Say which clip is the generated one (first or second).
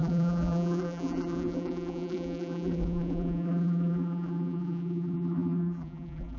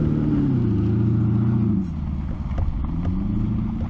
first